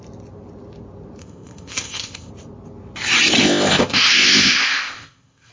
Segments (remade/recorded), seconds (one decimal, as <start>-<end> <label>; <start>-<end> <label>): 0.0-1.2 recorded; 1.2-2.3 remade; 2.3-3.4 recorded; 3.4-5.5 remade